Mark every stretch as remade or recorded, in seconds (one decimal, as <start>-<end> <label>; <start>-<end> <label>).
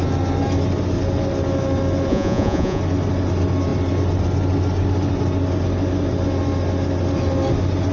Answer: 0.0-2.1 recorded; 2.1-2.8 remade; 2.8-7.9 recorded